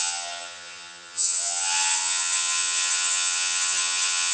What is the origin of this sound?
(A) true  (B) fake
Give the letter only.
B